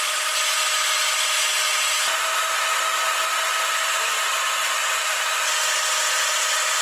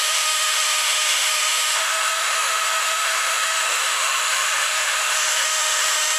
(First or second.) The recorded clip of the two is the first